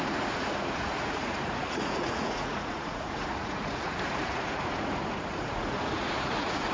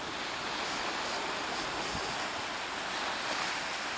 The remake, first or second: first